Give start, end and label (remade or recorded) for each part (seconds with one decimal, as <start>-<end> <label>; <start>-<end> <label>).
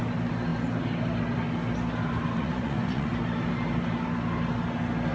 0.0-2.4 recorded; 2.4-3.1 remade; 3.1-5.1 recorded